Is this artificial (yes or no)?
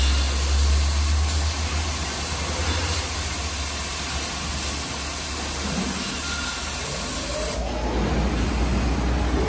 no